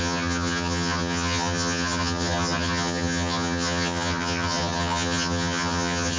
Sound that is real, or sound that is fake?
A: fake